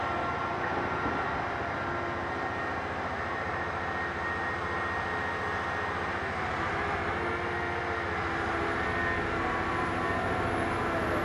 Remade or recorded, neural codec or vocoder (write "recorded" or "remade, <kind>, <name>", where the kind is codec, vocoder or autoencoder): recorded